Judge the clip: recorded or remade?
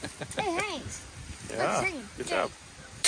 recorded